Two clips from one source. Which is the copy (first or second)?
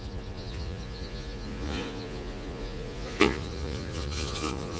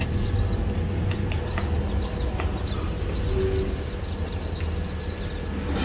first